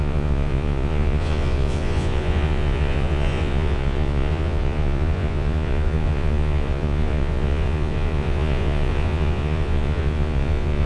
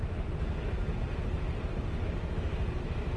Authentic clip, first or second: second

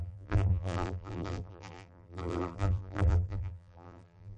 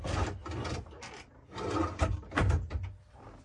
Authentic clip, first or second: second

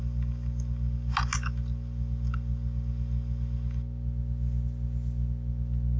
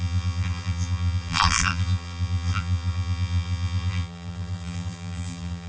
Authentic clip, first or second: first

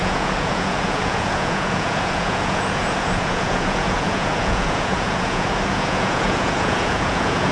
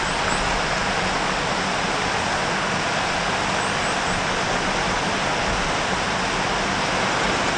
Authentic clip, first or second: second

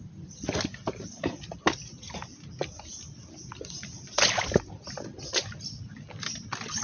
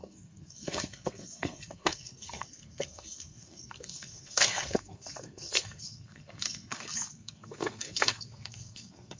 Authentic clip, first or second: first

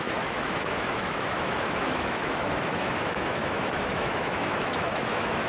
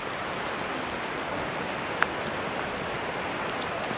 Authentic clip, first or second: second